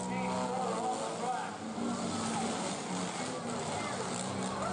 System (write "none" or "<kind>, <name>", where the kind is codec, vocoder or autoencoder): none